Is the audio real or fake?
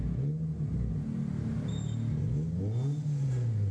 real